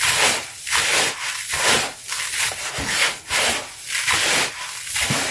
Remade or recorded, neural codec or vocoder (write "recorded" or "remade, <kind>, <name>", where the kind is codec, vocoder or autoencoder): recorded